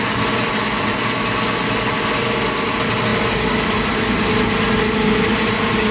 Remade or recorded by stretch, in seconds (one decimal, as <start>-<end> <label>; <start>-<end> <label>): 0.0-5.9 recorded